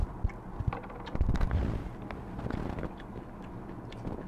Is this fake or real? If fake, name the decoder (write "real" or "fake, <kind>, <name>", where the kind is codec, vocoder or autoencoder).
real